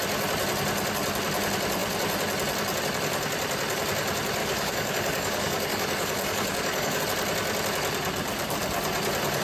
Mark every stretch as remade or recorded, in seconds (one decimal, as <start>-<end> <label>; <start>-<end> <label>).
0.0-4.4 recorded; 4.4-7.0 remade; 7.0-9.4 recorded